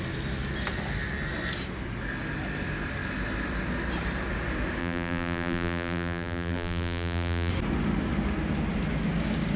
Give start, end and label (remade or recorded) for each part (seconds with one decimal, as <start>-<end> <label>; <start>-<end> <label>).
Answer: 0.0-4.8 recorded; 4.8-7.5 remade; 7.5-9.6 recorded